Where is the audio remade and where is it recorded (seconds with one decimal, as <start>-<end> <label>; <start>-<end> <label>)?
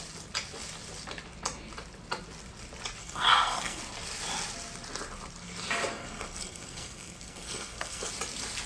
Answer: 0.0-3.0 recorded; 3.0-3.8 remade; 3.8-5.9 recorded; 5.9-8.1 remade; 8.1-8.7 recorded